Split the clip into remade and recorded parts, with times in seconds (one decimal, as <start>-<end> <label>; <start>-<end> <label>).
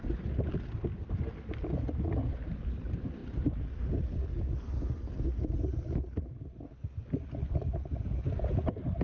0.0-3.2 recorded; 3.2-4.3 remade; 4.3-9.0 recorded